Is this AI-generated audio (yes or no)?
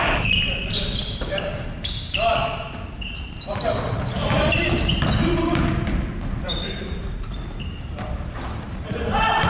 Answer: yes